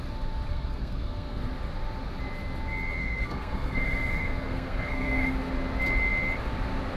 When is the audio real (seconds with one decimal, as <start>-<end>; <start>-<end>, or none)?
0.0-0.5; 1.4-3.0; 5.3-7.0